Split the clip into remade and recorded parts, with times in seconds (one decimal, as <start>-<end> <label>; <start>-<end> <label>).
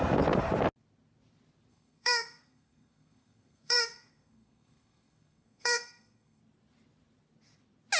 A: 0.0-1.7 recorded; 1.7-6.4 remade; 6.4-8.0 recorded